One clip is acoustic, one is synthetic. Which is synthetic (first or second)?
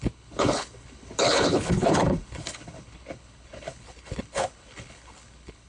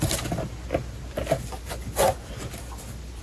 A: first